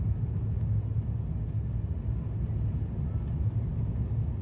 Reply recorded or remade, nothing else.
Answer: recorded